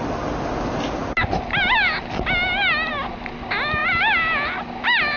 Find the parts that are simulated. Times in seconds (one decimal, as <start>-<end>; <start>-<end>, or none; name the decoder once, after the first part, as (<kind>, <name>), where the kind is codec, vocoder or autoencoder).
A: none